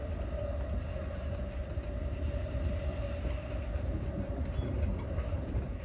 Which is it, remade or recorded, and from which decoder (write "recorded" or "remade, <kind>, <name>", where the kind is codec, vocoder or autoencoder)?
recorded